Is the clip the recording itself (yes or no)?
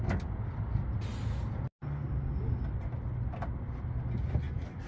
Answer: yes